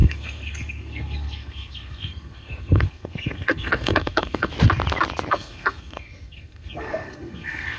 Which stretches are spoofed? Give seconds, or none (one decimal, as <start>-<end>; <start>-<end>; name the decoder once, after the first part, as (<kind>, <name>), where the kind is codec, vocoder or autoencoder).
0.0-4.5 (codec, SNAC); 5.3-7.8